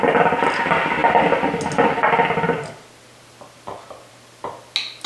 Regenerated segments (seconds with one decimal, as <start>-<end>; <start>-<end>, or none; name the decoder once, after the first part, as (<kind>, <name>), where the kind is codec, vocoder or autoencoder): none